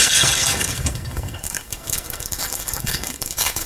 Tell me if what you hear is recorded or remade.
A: remade